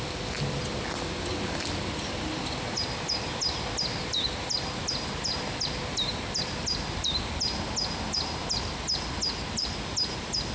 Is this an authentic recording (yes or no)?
yes